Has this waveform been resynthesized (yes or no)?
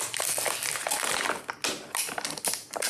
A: no